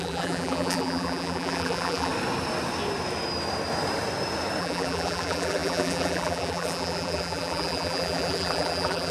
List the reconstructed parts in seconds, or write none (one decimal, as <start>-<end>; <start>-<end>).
0.0-2.1; 4.6-9.1